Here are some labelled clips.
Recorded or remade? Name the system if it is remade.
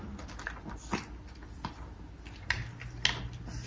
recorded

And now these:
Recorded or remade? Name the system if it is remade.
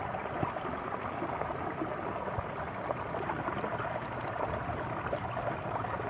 recorded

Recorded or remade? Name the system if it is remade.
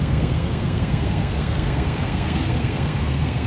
remade, codec, SNAC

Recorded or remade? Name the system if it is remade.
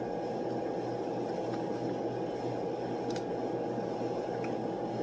recorded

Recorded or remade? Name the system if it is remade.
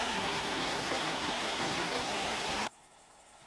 remade, codec, SNAC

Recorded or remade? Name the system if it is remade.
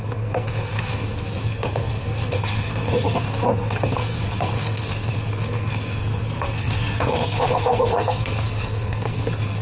remade, codec, SNAC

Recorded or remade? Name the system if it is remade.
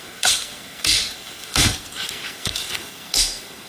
remade, codec, SNAC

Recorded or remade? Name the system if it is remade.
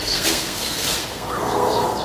remade, codec, SNAC